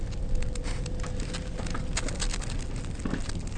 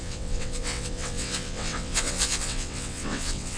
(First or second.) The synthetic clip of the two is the second